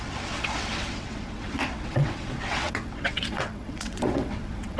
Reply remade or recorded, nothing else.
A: remade